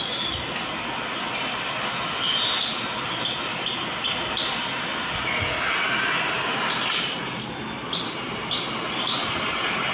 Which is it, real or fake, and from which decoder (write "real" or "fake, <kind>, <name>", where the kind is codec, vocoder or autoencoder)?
real